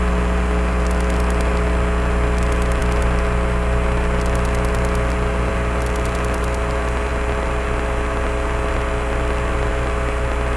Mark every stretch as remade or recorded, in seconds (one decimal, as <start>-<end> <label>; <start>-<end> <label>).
0.0-10.6 recorded